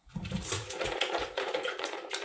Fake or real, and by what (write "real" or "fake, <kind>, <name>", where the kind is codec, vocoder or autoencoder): fake, vocoder, Vocos